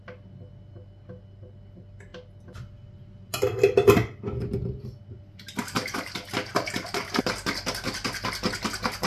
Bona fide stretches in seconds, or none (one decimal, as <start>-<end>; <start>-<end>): 0.0-9.1